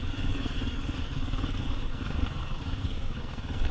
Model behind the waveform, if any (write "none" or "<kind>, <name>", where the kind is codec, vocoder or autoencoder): codec, SNAC